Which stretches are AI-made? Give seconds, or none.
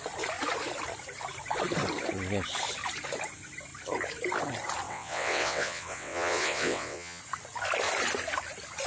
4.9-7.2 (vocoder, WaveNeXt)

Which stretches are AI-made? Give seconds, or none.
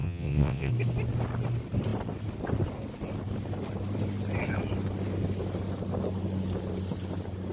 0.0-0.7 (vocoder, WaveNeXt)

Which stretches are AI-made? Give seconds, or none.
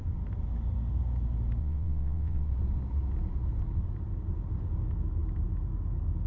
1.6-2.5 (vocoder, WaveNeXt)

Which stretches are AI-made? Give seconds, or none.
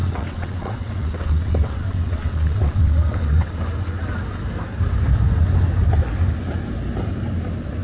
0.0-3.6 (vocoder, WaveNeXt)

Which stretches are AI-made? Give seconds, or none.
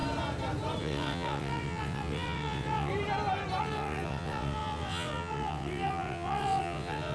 0.8-2.9 (vocoder, WaveNeXt); 3.6-7.1